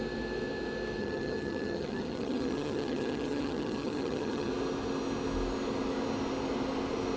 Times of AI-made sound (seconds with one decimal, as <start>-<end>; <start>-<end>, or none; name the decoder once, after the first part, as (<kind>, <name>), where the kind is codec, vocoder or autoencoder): 1.0-4.5 (vocoder, HiFi-GAN)